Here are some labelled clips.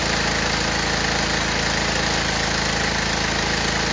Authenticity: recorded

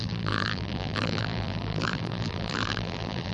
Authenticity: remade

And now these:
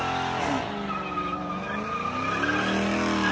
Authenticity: recorded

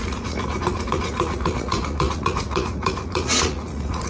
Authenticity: remade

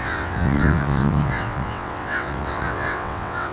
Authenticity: remade